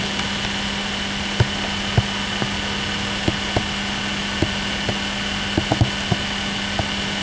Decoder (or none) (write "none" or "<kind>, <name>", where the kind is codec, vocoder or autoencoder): none